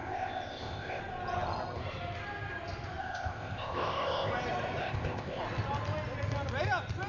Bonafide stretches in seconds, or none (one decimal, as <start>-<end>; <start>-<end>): 1.0-3.0; 4.3-4.8; 5.4-7.1